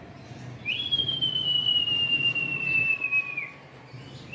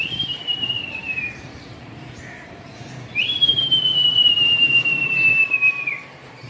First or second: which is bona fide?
first